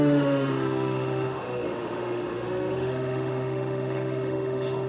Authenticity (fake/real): fake